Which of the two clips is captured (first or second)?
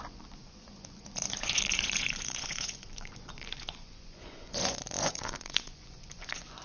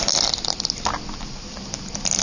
second